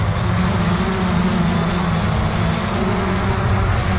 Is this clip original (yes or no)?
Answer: yes